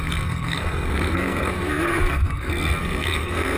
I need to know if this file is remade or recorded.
remade